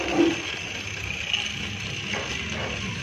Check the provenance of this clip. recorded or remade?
recorded